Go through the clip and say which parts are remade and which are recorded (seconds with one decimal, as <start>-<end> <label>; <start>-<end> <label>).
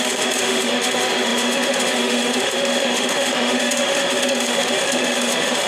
0.0-5.7 remade